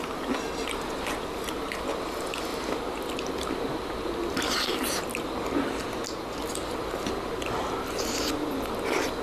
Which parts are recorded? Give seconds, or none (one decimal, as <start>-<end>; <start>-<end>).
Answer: 0.0-9.2